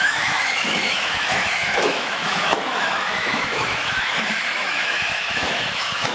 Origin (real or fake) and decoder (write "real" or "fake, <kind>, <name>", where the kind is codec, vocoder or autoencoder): fake, autoencoder, DAC-VAE